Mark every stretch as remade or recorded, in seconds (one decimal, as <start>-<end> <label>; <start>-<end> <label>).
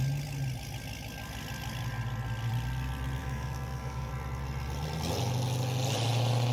0.0-3.2 recorded; 3.2-4.1 remade; 4.1-6.5 recorded